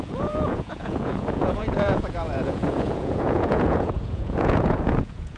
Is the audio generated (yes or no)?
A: yes